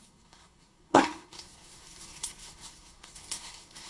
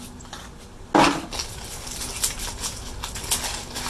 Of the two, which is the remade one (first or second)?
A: first